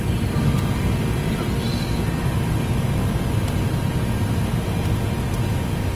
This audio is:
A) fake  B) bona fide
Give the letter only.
B